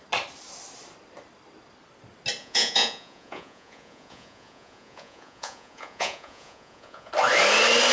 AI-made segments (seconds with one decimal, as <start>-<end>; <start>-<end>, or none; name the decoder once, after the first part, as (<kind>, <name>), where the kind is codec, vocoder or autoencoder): 2.4-7.1 (vocoder, Vocos)